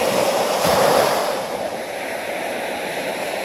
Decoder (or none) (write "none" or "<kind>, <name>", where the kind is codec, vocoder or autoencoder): vocoder, BigVGAN v2